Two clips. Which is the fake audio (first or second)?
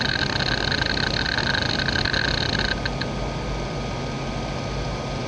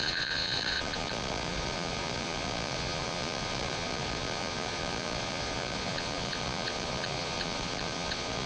second